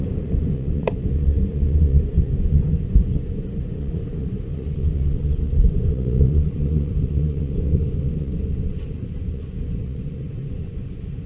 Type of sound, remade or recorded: remade